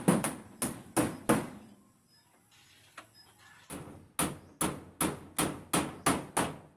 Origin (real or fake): real